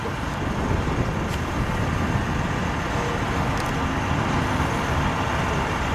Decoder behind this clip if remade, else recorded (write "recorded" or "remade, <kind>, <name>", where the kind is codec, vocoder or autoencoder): recorded